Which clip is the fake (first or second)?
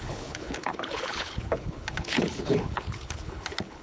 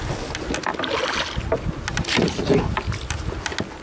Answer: first